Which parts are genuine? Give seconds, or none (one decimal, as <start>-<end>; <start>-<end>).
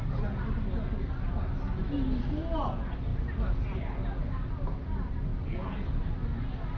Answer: 0.0-6.8